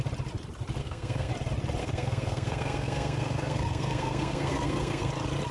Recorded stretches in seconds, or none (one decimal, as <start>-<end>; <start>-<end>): 0.0-0.8; 1.3-1.8; 5.1-5.5